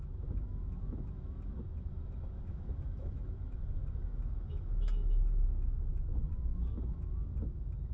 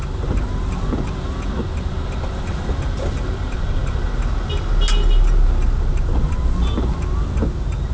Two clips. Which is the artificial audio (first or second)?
first